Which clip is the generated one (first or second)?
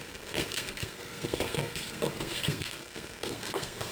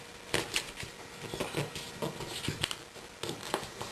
first